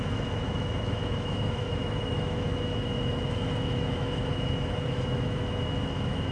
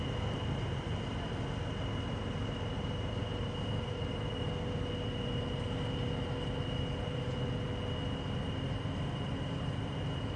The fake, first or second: first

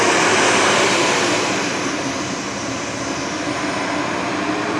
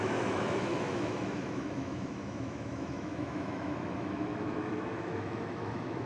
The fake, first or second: second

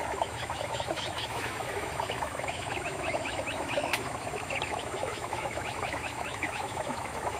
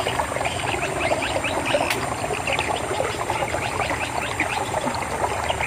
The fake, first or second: first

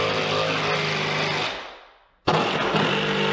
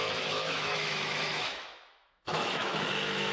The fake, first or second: second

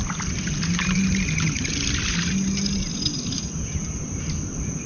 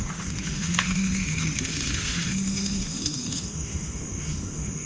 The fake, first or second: second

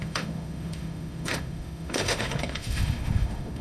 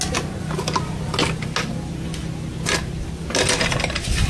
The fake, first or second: first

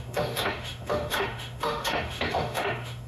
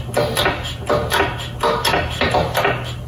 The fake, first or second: first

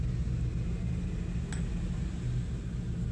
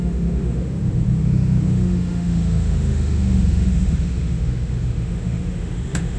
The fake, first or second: second